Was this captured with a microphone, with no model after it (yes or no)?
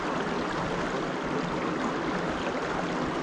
yes